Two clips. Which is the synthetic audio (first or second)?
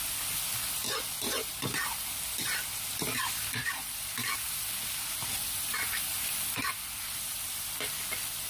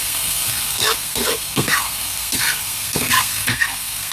second